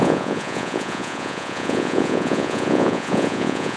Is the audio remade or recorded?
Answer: remade